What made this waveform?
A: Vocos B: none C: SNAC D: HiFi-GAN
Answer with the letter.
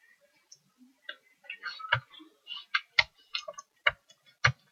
B